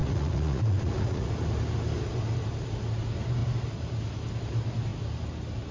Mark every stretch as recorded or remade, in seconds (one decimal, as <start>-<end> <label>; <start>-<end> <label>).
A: 0.0-1.3 remade; 1.3-5.7 recorded